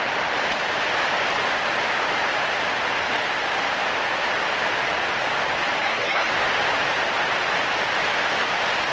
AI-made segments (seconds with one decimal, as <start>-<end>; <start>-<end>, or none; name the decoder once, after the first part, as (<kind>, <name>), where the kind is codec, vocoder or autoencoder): 5.8-6.3 (codec, SNAC)